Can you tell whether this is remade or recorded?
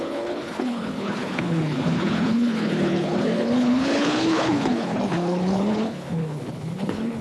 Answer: remade